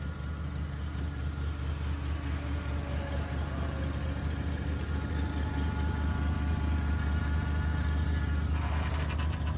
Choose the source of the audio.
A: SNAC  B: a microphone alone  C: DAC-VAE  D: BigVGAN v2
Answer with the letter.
B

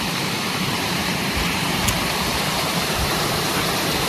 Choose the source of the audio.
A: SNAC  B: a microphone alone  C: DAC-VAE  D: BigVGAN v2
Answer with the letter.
D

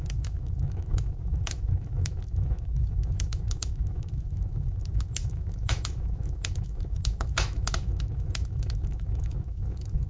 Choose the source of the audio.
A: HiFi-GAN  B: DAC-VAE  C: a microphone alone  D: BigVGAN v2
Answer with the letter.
B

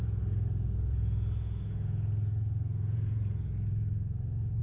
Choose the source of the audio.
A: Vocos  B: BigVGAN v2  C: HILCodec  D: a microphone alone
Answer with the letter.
A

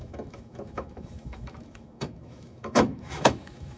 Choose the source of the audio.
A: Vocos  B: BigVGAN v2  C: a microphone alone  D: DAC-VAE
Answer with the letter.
D